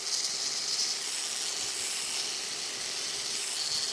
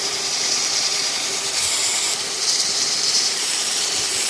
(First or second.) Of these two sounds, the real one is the first